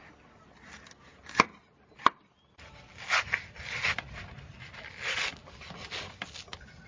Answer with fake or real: real